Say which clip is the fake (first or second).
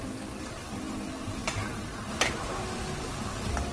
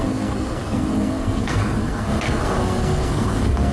second